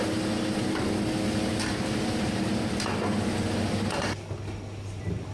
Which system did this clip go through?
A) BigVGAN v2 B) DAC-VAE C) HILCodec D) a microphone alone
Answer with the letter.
D